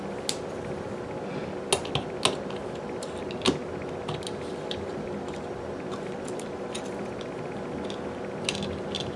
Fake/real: real